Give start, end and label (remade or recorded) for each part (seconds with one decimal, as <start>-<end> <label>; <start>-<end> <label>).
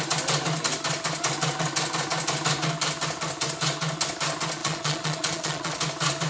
0.0-4.6 recorded; 4.6-5.8 remade; 5.8-6.3 recorded